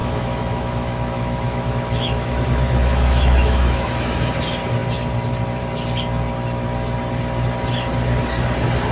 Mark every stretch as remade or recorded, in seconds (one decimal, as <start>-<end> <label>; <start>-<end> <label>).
0.0-4.3 remade; 4.3-8.9 recorded